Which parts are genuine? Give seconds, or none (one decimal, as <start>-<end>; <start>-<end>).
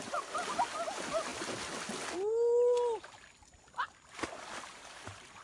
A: 0.0-4.7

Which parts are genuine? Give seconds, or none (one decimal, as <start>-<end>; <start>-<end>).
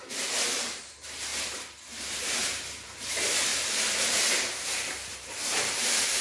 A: 1.3-1.9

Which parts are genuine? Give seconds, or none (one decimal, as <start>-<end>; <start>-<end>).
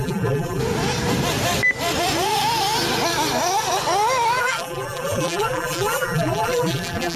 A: 0.6-4.4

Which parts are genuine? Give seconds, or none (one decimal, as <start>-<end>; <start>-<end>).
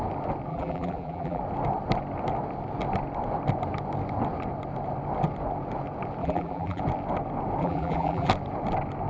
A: 0.0-0.5; 1.4-6.2; 6.8-7.6; 8.3-9.1